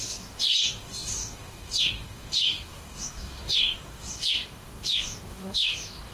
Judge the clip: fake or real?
fake